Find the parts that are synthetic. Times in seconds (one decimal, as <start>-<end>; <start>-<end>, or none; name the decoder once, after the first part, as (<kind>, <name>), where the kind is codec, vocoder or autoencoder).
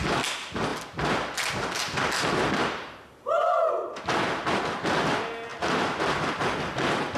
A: 0.7-3.7 (vocoder, BigVGAN v2); 5.5-6.3